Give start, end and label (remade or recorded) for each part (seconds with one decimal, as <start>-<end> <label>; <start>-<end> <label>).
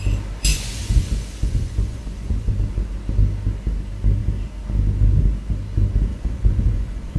0.0-0.5 recorded; 0.5-2.5 remade; 2.5-6.1 recorded; 6.1-7.2 remade